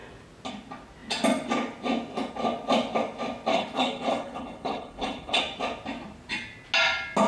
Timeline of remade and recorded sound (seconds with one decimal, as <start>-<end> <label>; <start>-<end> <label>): 0.0-3.5 recorded; 3.5-5.4 remade; 5.4-7.3 recorded